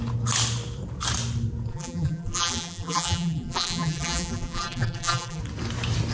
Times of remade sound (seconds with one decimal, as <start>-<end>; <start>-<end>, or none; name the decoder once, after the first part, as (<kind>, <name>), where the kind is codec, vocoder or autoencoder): 1.7-5.4 (vocoder, BigVGAN v2)